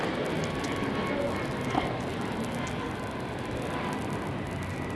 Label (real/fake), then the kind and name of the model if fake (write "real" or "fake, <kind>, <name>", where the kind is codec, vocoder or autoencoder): real